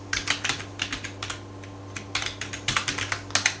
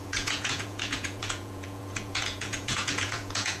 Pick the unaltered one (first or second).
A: first